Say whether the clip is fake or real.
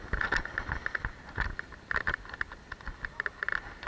real